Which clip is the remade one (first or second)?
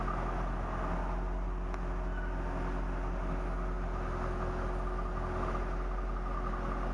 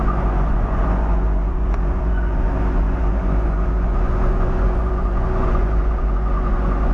second